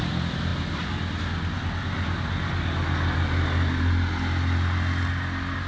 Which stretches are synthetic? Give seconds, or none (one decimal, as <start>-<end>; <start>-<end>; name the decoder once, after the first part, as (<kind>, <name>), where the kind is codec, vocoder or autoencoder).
none